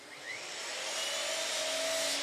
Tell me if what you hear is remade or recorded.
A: recorded